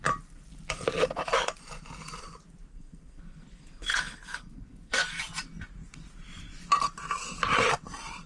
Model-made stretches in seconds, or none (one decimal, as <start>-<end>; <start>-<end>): 2.7-5.2